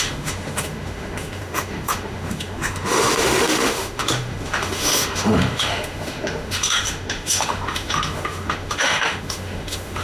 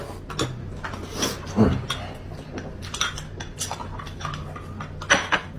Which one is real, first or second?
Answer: second